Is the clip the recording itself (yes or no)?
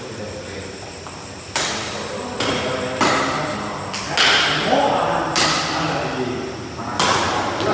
yes